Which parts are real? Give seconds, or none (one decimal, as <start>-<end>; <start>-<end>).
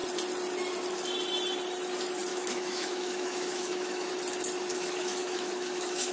0.0-2.3; 4.1-4.7